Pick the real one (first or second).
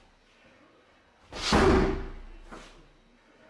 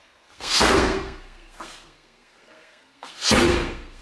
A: first